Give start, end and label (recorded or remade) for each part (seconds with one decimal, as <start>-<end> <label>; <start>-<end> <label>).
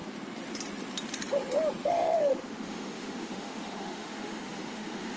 0.0-1.9 recorded; 1.9-5.2 remade